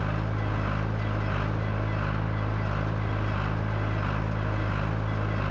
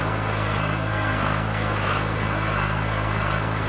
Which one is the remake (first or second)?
second